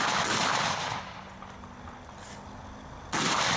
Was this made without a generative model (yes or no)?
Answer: yes